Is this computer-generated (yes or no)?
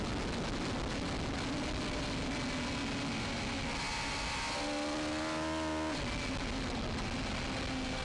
no